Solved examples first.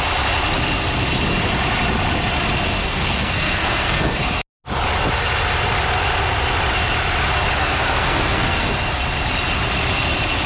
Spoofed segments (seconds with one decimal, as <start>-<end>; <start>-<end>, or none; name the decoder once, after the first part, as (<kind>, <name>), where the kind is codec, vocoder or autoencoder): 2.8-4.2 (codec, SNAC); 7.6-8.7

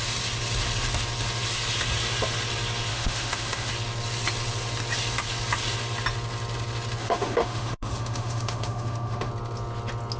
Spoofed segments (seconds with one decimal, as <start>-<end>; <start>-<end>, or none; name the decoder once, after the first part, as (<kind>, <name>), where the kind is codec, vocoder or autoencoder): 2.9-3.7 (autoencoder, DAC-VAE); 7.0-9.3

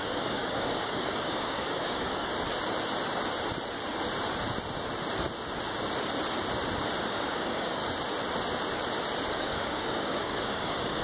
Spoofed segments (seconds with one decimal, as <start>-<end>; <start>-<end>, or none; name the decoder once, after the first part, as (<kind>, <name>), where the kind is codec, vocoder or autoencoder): 0.0-2.3 (codec, DAC); 7.1-7.8; 9.3-11.0

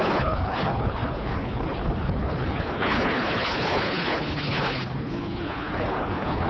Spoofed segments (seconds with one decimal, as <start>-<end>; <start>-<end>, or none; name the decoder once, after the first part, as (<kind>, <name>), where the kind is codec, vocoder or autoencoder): 0.0-6.5 (codec, HILCodec)

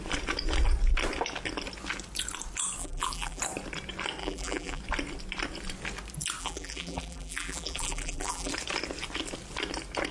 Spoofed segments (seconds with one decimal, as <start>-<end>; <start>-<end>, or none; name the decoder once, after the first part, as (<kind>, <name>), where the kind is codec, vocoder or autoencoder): 2.8-3.4 (vocoder, BigVGAN v2); 4.2-4.8; 6.4-8.5